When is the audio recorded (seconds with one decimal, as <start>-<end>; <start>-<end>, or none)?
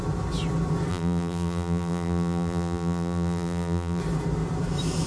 0.0-0.9; 4.0-5.1